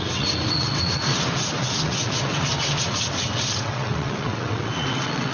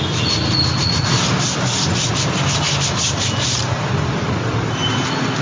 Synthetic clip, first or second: first